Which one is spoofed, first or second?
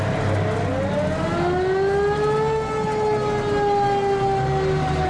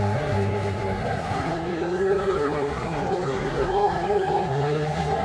second